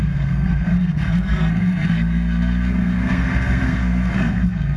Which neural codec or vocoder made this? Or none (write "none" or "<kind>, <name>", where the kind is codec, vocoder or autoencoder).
codec, SNAC